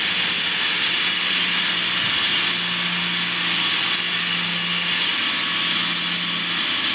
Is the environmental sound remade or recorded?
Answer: recorded